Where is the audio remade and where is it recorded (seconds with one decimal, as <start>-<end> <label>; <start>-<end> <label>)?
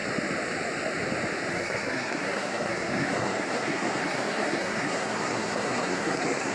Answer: 0.0-1.5 recorded; 1.5-6.5 remade